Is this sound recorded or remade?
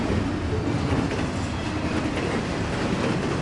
recorded